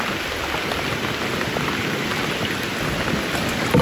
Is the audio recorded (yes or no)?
yes